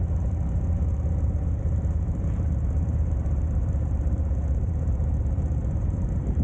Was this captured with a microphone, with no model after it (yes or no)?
no